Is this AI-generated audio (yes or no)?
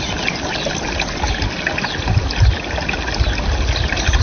no